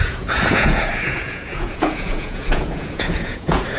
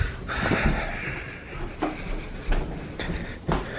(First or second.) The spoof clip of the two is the first